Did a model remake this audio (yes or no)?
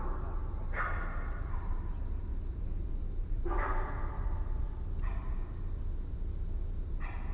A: no